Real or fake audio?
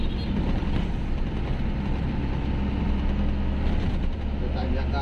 real